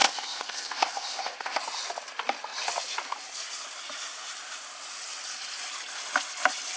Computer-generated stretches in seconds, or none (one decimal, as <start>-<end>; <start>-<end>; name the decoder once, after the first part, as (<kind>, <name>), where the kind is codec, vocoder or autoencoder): 0.0-1.6 (codec, ZipCodec)